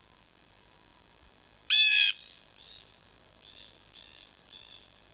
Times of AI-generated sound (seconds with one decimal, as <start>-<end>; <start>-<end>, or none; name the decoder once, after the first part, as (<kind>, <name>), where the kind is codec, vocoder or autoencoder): 0.0-5.1 (vocoder, BigVGAN v2)